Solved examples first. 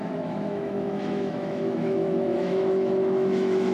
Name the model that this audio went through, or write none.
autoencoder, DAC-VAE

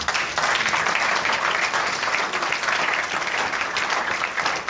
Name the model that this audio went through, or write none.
none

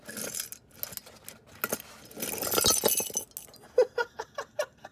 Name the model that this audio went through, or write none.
none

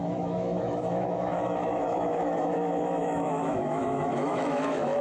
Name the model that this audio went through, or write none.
autoencoder, DAC-VAE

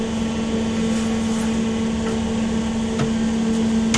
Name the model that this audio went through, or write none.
none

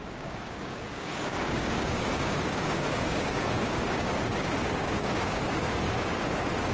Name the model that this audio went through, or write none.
codec, DAC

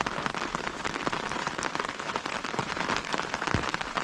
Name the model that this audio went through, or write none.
vocoder, BigVGAN v2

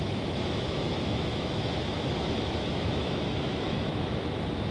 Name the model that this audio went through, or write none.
autoencoder, DAC-VAE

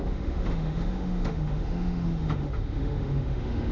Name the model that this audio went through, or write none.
autoencoder, DAC-VAE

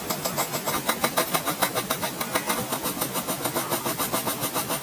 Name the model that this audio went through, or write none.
none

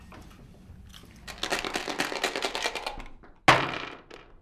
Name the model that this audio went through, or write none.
none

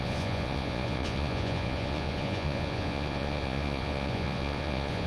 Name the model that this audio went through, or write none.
vocoder, Vocos